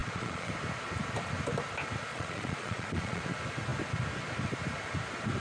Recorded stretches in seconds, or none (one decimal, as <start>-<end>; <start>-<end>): 0.5-2.1; 3.2-5.4